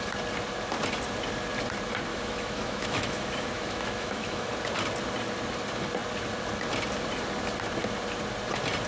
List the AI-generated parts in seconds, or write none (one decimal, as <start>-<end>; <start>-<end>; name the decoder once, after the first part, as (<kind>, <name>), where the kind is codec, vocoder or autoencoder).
2.1-4.5 (autoencoder, DAC-VAE)